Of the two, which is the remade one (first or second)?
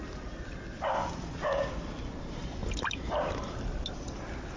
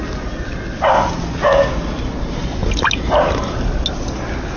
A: first